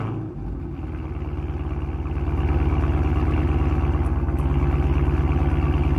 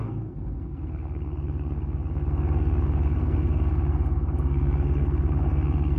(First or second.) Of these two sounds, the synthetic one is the second